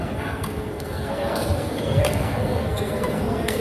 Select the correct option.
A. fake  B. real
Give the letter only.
A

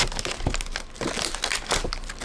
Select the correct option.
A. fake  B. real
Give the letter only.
B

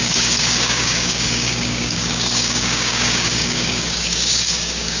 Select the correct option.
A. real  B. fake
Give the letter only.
B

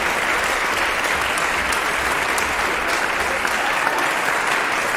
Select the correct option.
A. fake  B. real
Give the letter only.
B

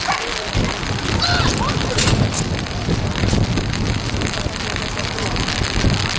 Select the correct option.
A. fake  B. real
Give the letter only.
B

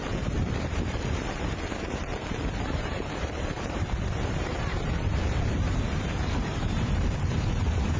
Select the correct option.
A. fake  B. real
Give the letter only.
A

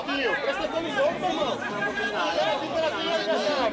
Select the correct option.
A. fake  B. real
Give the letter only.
B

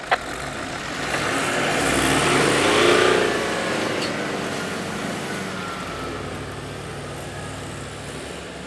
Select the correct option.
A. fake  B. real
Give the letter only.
B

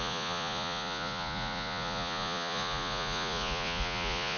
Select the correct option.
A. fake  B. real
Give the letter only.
A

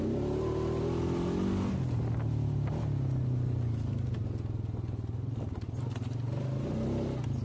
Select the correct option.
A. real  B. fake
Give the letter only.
A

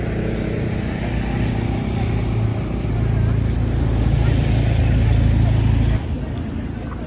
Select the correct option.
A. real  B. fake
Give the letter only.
A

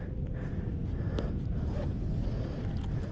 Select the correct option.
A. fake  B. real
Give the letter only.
B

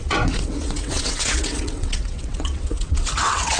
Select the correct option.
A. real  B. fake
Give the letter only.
B